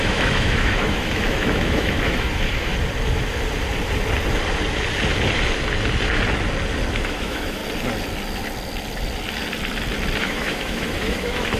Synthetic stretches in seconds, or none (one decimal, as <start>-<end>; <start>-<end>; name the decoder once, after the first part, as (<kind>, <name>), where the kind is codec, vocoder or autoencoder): 0.0-2.7 (autoencoder, DAC-VAE); 6.9-7.6; 10.2-11.6